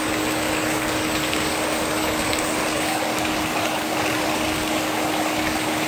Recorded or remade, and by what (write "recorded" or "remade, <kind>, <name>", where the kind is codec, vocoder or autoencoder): remade, codec, DAC